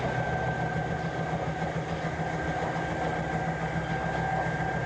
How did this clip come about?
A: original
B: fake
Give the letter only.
A